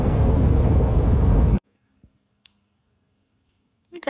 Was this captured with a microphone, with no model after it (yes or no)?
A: no